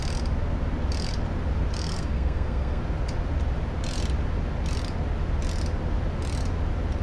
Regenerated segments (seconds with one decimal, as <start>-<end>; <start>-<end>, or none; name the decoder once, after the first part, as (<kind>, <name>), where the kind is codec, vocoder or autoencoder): 1.9-2.8 (codec, SNAC)